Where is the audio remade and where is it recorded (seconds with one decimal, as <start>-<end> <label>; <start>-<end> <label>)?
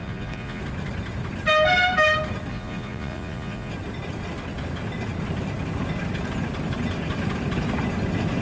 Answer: 0.0-0.6 remade; 0.6-2.5 recorded; 2.5-3.7 remade; 3.7-8.4 recorded